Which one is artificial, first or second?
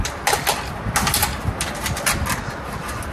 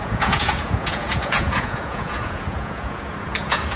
second